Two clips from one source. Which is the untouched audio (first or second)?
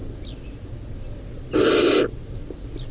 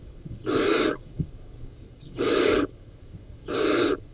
first